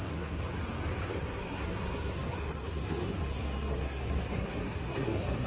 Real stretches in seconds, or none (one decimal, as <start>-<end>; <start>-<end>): 0.4-1.1